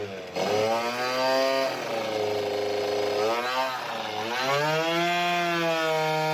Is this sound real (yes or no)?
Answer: yes